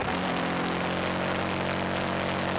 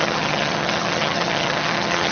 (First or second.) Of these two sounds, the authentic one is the first